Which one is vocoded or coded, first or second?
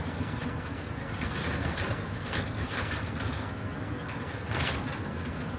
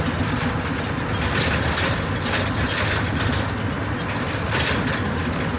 first